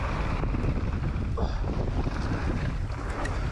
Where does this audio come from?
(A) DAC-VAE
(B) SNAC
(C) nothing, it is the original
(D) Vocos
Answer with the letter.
C